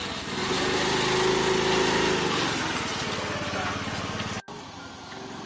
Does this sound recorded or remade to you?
recorded